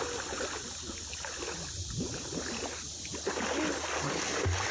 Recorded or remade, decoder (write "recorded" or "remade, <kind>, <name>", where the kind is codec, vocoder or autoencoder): recorded